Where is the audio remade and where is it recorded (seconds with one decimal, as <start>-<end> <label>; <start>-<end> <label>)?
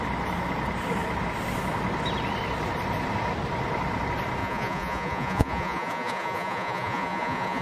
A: 0.0-4.4 recorded; 4.4-7.6 remade